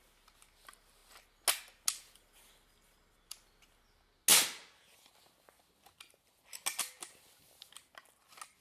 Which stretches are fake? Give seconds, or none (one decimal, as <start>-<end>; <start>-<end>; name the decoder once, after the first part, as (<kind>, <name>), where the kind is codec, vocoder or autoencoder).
none